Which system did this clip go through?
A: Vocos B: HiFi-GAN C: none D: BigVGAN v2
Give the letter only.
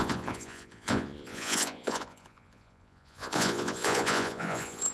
A